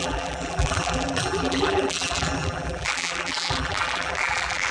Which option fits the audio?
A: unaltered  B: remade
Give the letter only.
B